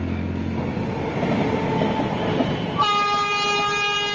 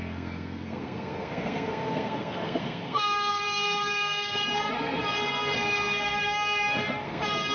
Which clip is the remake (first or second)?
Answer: second